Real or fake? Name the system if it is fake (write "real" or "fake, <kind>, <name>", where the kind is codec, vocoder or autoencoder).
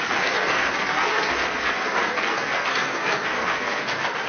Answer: fake, codec, SNAC